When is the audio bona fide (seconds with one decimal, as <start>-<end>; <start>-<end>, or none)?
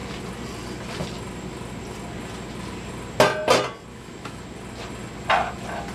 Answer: 0.0-3.9; 4.4-5.9